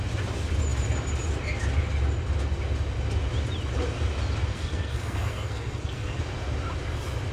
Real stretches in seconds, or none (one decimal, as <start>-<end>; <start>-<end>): 0.0-4.5; 6.2-7.3